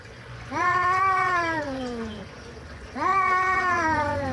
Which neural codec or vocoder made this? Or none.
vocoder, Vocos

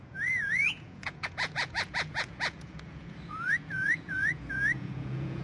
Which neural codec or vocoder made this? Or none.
vocoder, Vocos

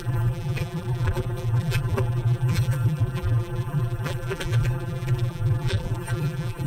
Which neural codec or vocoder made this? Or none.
vocoder, BigVGAN v2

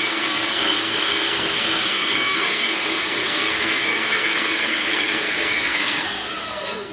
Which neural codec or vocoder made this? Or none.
codec, SNAC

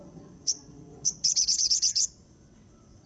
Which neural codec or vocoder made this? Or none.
vocoder, WaveNeXt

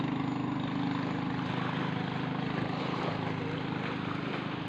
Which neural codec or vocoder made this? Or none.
none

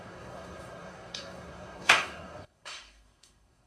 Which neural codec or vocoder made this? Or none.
codec, SNAC